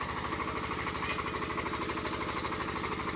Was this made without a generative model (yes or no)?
yes